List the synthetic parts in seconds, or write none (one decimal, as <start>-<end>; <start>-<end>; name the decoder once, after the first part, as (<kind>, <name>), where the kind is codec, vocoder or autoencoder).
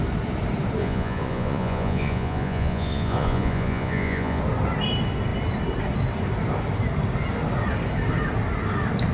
0.8-4.4 (vocoder, Vocos)